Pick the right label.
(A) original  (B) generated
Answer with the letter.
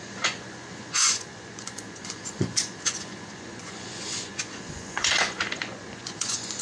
B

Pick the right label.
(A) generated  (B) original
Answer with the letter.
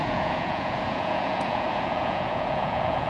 A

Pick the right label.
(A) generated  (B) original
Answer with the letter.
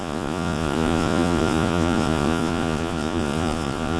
A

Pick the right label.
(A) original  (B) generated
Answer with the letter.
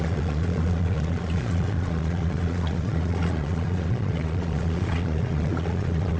B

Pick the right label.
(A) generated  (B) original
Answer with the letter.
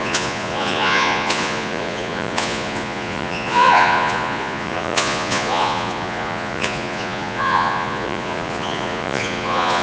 A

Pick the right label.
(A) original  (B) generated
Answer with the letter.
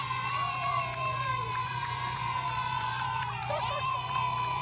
B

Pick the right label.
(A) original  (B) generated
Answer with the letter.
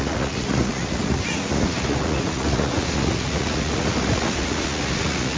B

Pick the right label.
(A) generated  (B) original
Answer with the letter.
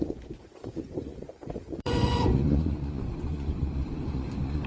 A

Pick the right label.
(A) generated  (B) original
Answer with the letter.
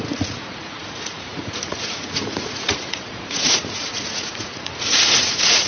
A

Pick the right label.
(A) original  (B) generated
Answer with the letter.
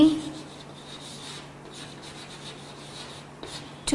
A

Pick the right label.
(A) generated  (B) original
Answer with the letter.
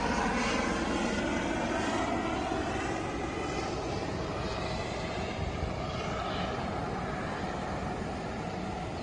B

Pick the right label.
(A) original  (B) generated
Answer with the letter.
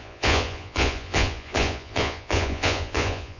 B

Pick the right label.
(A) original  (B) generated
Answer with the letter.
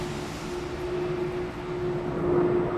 A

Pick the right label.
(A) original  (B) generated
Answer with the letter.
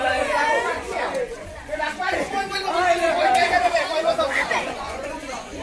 B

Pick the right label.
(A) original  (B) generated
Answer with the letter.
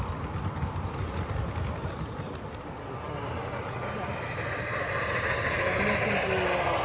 A